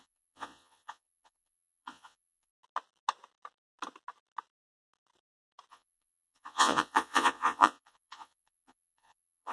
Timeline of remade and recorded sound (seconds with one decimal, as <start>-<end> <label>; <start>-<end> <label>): 0.0-2.5 remade; 2.5-5.7 recorded; 5.7-9.5 remade